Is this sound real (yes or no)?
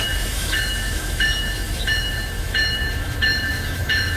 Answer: no